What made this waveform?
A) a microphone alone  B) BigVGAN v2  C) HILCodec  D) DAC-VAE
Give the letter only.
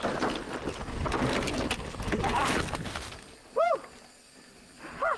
A